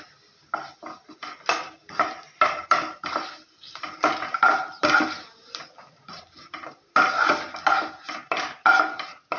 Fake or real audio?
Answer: real